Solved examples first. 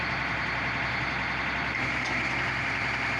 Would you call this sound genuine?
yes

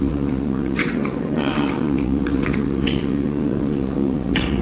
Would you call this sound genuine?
no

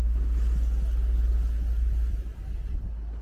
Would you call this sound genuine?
yes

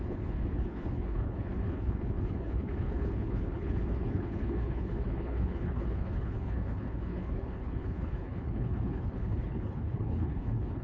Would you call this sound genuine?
no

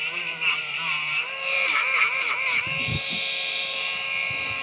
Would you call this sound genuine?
no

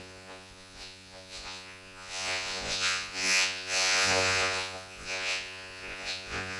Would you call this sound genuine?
no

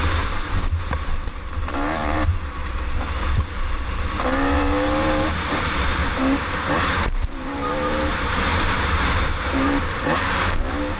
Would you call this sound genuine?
no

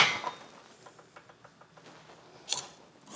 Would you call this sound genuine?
yes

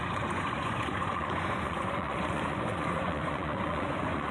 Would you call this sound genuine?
no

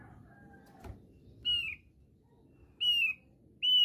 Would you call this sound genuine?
yes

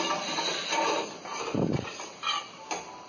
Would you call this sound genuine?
yes